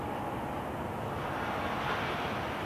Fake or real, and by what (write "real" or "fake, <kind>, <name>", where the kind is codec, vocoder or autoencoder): real